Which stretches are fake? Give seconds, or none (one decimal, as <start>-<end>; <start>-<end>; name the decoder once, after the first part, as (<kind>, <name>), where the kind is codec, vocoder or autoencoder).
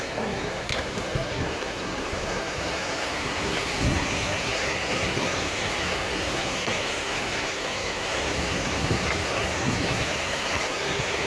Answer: 0.0-11.3 (codec, SNAC)